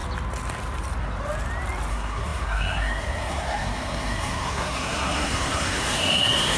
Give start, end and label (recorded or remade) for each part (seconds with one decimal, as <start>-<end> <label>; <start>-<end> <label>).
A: 0.0-1.9 recorded; 1.9-6.6 remade